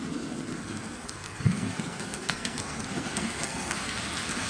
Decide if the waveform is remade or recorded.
remade